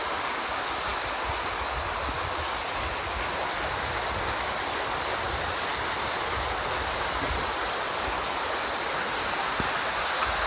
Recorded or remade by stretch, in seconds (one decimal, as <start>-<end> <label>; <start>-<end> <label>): 0.0-10.5 recorded